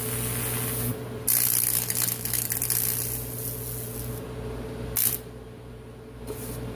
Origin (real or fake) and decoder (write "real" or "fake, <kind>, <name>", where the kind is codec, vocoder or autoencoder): real